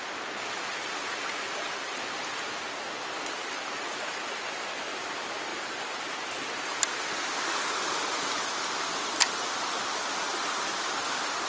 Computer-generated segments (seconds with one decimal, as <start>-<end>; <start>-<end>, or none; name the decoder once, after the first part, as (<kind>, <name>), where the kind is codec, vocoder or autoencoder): none